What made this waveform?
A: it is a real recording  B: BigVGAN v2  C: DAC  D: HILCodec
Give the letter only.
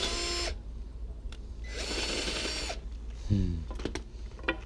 A